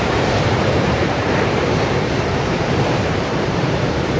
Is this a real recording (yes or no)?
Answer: no